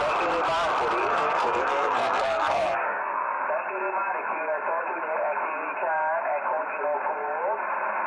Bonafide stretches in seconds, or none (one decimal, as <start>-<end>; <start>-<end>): 0.0-1.0; 3.4-8.1